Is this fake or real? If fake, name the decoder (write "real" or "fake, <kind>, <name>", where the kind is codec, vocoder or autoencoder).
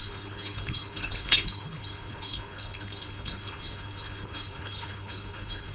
fake, codec, HILCodec